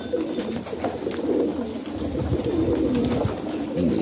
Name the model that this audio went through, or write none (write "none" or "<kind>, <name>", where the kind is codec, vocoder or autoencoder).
none